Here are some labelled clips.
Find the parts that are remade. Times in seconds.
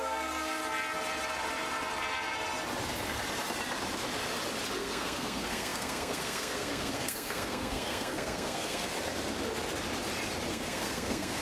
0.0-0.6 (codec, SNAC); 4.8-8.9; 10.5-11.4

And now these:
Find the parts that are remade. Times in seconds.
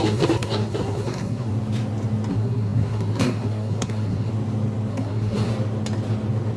0.0-1.5 (codec, SNAC); 2.3-4.3; 4.9-5.5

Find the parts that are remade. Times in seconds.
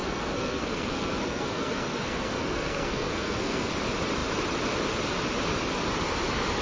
0.0-3.7 (codec, SNAC)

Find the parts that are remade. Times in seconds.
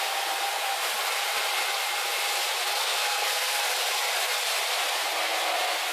2.8-3.6 (codec, SNAC)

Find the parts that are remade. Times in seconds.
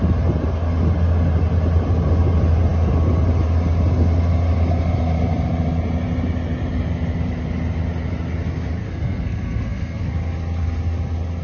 8.8-10.1 (codec, SNAC)